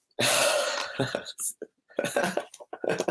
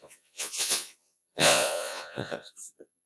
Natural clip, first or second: first